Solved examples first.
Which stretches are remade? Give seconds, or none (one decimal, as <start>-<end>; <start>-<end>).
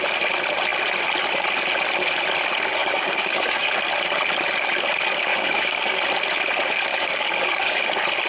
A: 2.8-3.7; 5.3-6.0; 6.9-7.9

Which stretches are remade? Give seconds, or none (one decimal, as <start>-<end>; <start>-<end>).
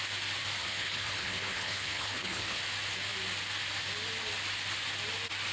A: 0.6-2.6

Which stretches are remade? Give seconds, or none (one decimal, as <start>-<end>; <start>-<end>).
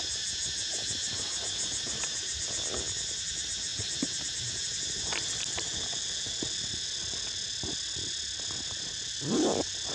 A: none